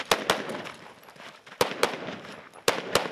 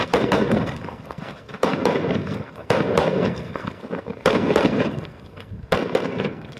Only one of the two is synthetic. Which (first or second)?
second